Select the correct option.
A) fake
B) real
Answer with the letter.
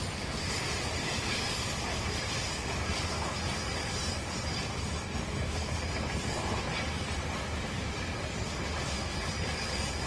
B